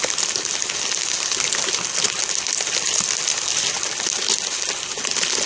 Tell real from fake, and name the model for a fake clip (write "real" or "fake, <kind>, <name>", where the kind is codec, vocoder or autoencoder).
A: real